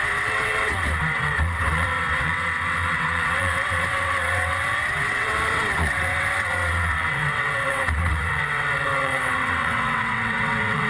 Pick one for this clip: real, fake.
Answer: fake